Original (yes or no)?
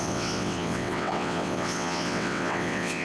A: no